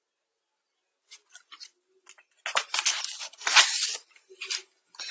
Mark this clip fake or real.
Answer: real